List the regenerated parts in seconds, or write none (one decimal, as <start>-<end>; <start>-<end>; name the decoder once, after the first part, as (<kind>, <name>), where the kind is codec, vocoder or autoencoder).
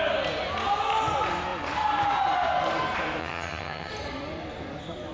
3.2-3.9 (vocoder, HiFi-GAN)